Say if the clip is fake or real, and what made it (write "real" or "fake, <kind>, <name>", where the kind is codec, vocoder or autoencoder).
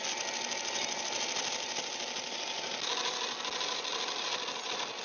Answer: real